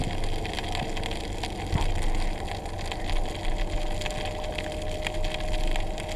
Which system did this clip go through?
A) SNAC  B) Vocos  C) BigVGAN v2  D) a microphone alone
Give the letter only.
D